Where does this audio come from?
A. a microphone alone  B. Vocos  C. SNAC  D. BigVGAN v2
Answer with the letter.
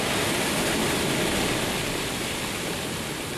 A